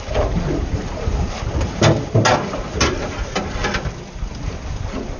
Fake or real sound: real